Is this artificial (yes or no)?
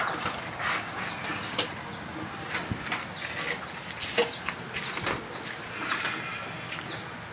no